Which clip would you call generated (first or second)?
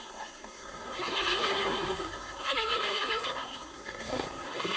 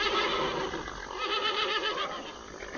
first